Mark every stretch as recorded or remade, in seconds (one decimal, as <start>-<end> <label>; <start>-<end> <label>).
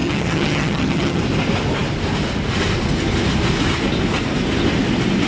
0.0-1.2 remade; 1.2-5.3 recorded